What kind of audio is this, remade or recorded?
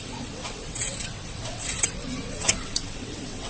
remade